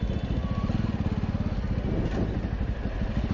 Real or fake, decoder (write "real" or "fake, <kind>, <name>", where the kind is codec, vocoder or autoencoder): real